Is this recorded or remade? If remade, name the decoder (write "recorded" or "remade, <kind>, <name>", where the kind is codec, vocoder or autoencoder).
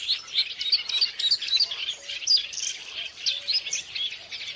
recorded